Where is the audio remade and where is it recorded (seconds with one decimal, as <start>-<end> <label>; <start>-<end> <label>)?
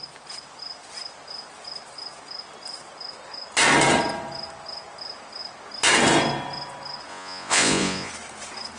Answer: 0.0-7.1 recorded; 7.1-8.1 remade; 8.1-8.8 recorded